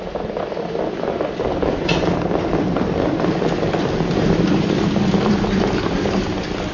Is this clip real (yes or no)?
no